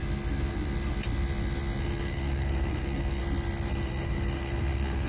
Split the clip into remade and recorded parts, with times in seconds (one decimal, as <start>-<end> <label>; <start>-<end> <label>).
0.0-1.8 recorded; 1.8-3.2 remade; 3.2-3.7 recorded; 3.7-5.1 remade